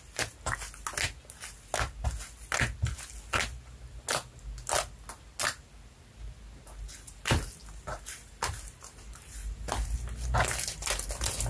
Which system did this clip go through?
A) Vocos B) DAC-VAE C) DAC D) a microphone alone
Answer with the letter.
D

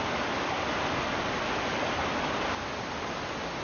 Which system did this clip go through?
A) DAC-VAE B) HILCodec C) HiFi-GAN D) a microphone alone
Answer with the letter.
D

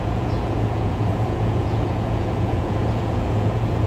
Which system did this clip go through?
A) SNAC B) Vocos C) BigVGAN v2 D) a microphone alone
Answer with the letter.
B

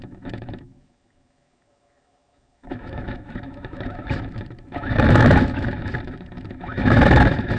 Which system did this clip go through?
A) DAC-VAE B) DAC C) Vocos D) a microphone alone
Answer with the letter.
A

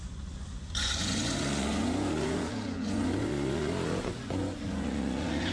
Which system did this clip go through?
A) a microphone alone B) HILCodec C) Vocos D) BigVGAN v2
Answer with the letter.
C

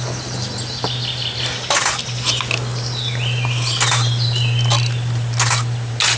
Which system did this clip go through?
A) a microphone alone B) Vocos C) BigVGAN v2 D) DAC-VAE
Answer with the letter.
A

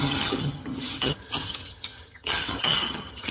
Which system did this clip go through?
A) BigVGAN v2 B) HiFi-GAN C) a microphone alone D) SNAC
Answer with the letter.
B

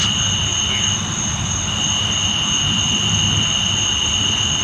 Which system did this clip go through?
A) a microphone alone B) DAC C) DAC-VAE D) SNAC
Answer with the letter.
A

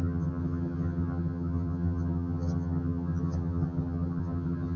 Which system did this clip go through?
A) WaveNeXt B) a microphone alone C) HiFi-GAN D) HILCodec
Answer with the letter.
C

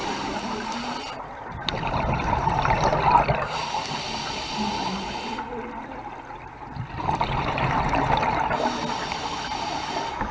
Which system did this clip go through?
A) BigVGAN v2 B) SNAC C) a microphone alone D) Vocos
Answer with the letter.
C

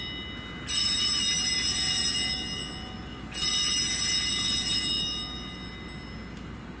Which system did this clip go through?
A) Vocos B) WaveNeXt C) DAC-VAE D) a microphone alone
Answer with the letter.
D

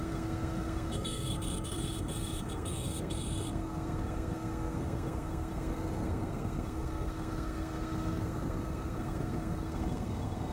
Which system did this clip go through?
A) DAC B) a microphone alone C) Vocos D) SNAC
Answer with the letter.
D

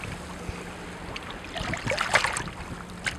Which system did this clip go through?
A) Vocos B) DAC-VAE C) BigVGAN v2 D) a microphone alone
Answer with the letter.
D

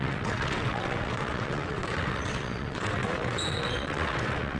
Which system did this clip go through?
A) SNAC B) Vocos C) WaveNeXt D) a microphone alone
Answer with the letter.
C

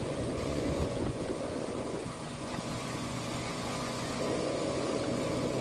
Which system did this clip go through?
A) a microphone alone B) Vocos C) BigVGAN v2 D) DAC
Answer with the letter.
B